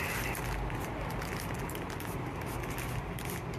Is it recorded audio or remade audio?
recorded